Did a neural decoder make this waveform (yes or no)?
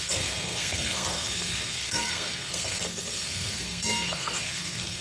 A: yes